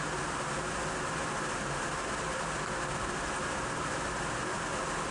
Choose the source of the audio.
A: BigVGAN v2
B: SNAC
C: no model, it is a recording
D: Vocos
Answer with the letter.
C